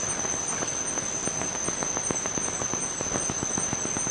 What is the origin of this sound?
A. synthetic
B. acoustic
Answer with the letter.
B